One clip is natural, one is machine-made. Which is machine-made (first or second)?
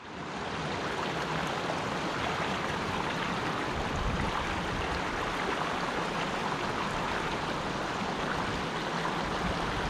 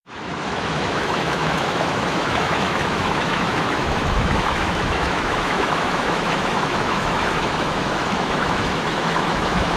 second